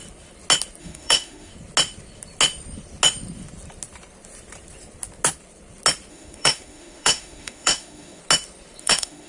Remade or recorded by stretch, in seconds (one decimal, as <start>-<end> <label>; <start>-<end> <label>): 0.0-0.8 recorded; 0.8-1.5 remade; 1.5-6.1 recorded; 6.1-8.2 remade; 8.2-8.8 recorded; 8.8-9.3 remade